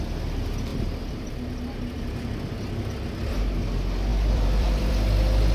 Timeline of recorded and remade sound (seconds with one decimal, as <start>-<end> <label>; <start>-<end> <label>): 0.0-0.7 recorded; 0.7-1.3 remade; 1.3-4.1 recorded; 4.1-4.9 remade; 4.9-5.5 recorded